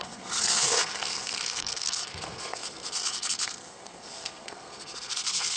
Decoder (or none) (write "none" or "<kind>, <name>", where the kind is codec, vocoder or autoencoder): codec, SNAC